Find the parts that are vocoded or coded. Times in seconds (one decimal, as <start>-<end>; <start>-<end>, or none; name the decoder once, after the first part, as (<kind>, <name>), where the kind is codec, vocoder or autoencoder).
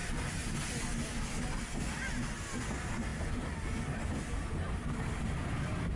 none